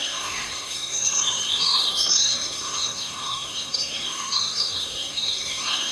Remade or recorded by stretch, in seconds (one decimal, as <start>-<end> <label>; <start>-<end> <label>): 0.0-5.9 remade